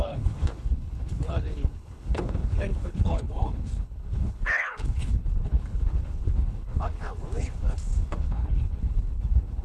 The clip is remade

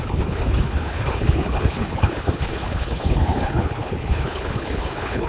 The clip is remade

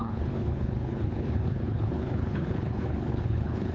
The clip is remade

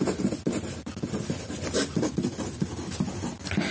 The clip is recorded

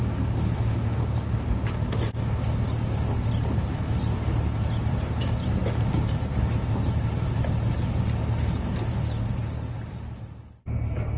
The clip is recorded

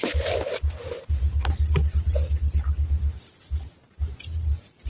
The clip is recorded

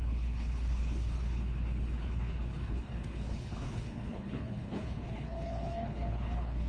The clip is remade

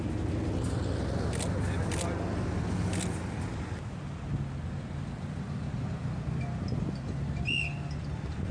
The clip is recorded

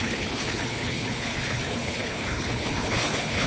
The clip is remade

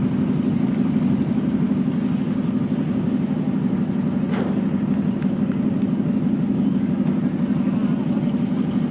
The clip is recorded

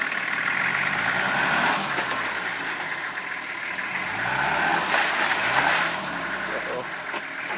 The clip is recorded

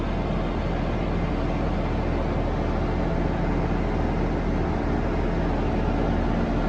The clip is recorded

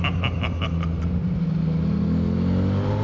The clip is recorded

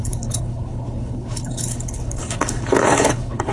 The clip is remade